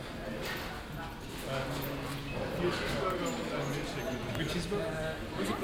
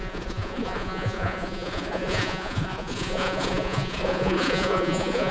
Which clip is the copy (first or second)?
second